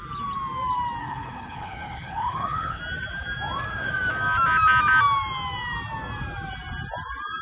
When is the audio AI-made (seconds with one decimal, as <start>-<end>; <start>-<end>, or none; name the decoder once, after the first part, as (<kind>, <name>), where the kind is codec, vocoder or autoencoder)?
1.0-2.8 (codec, HILCodec)